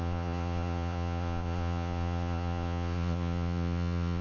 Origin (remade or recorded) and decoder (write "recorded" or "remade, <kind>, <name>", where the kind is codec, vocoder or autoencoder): remade, vocoder, Vocos